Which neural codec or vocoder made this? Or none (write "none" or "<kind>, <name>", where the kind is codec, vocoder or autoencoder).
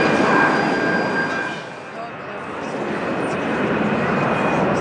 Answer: none